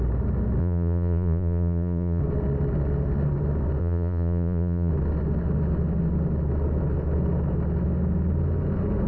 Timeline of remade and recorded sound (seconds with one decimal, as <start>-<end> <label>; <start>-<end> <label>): 0.0-0.6 recorded; 0.6-2.2 remade; 2.2-3.8 recorded; 3.8-4.9 remade; 4.9-9.1 recorded